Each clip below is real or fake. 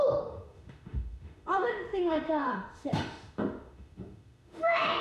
fake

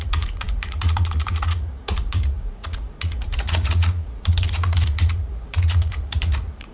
fake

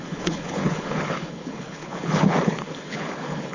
fake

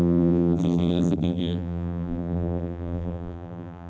fake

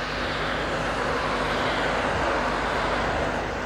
real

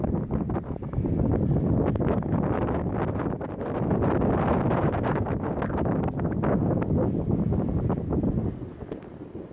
real